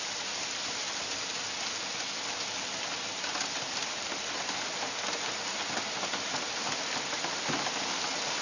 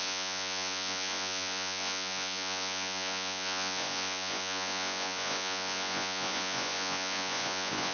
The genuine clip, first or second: first